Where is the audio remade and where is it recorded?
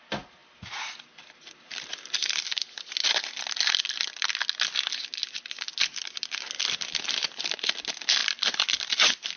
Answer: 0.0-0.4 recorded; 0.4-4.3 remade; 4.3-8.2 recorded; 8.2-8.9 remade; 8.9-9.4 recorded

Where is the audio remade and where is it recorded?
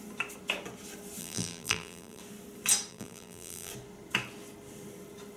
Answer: 0.0-1.2 recorded; 1.2-2.2 remade; 2.2-2.9 recorded; 2.9-3.7 remade; 3.7-5.4 recorded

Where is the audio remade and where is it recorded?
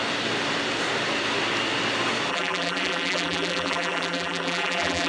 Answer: 0.0-2.3 recorded; 2.3-5.1 remade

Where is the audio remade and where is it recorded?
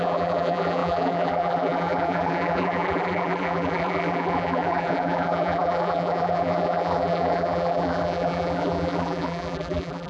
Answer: 0.0-10.1 remade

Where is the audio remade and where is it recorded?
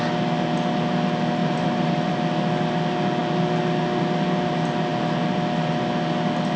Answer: 0.0-1.4 recorded; 1.4-2.1 remade; 2.1-6.6 recorded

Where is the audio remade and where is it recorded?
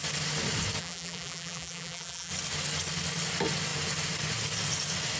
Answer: 0.0-0.8 recorded; 0.8-2.3 remade; 2.3-5.2 recorded